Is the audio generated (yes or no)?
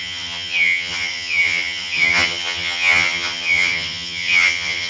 yes